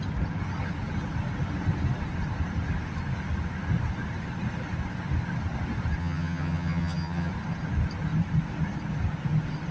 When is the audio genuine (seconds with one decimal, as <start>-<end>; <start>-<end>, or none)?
0.0-6.0; 7.3-9.7